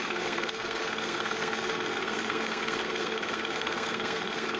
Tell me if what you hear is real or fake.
fake